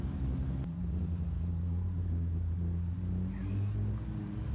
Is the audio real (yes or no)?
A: yes